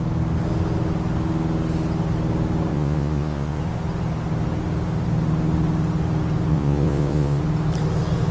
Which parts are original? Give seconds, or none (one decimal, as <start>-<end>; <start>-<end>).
0.0-2.7; 3.6-6.5; 7.4-8.3